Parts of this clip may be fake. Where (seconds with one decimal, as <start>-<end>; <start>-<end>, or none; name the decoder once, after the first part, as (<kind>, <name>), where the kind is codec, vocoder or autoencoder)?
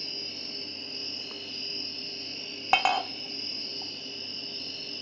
none